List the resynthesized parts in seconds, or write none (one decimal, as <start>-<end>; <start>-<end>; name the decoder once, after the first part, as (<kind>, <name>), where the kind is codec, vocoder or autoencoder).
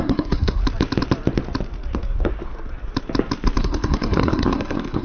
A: 0.0-0.6 (codec, SNAC); 3.6-5.0